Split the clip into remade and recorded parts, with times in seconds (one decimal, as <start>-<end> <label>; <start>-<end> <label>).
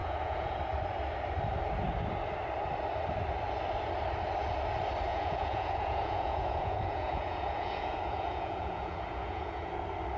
0.0-0.6 remade; 0.6-5.1 recorded; 5.1-9.7 remade; 9.7-10.2 recorded